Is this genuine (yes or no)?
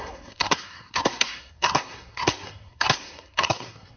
no